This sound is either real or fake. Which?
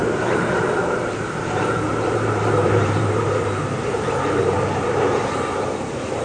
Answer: fake